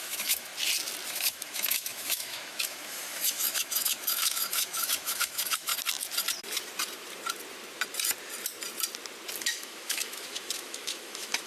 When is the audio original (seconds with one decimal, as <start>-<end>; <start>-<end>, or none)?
0.5-1.1; 5.7-9.4